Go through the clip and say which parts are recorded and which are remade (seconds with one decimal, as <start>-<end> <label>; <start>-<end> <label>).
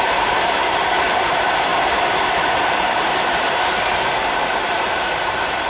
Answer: 0.0-1.7 remade; 1.7-4.3 recorded; 4.3-5.7 remade